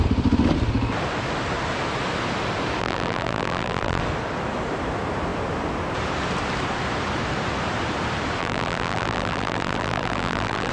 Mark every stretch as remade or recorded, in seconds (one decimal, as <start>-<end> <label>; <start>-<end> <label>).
0.0-2.8 recorded; 2.8-4.0 remade; 4.0-8.4 recorded; 8.4-10.7 remade